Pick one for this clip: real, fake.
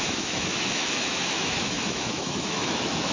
fake